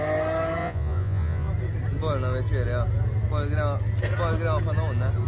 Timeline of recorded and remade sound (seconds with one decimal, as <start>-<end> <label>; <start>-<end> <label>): 0.0-0.6 recorded; 0.6-1.5 remade; 1.5-5.3 recorded